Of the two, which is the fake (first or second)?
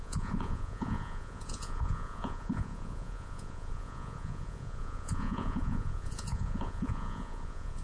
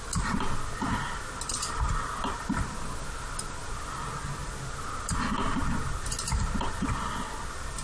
first